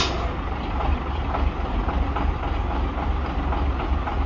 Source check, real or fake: real